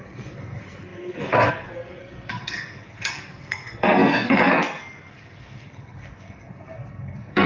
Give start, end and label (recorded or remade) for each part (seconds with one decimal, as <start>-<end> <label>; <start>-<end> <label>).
0.0-7.5 remade